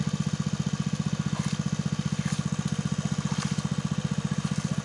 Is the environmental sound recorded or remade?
recorded